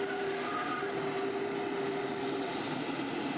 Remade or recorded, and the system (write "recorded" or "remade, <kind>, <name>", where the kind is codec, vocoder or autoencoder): recorded